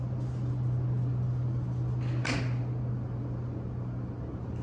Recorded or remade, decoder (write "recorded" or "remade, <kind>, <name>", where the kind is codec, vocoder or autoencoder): recorded